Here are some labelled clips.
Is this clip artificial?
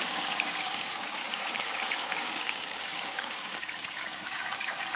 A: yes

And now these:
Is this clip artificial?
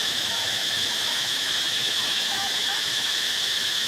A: yes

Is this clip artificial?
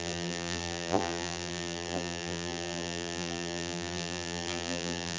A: yes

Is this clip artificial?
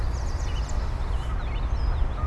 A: no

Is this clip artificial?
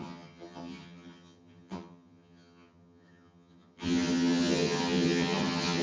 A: yes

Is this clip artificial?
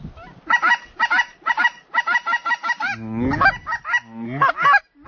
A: no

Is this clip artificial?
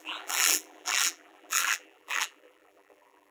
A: yes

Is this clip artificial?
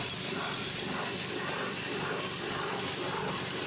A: yes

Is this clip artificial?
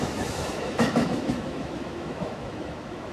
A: yes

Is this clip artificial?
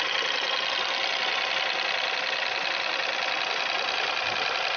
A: no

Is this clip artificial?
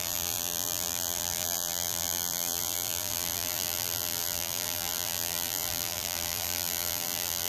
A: yes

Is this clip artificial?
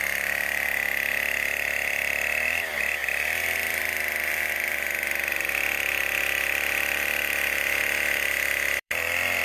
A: yes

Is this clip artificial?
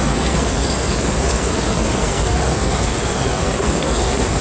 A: yes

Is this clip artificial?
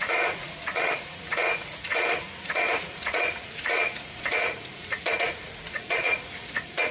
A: yes